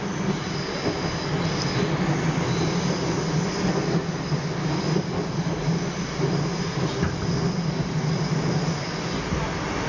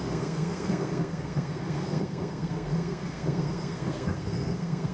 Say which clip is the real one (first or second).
first